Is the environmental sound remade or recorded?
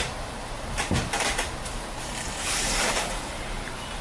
remade